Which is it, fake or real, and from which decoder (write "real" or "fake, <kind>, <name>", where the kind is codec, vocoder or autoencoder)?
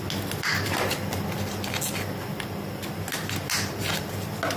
real